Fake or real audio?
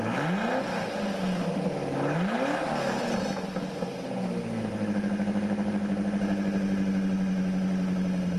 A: real